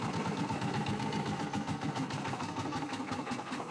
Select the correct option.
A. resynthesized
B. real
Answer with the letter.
A